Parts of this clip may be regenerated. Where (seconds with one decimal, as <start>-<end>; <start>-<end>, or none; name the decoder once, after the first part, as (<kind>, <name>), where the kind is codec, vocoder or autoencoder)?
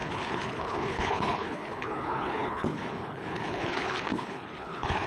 0.0-5.1 (codec, HILCodec)